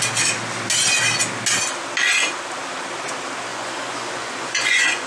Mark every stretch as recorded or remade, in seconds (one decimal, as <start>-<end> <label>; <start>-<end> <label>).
0.0-3.5 recorded; 3.5-5.1 remade